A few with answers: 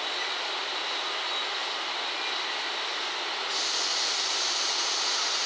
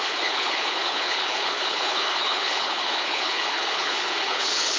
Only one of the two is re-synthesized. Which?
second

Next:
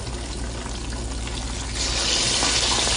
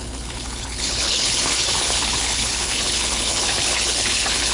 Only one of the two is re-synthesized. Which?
second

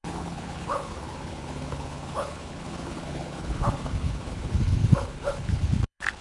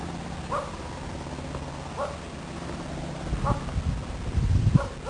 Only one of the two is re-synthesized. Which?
first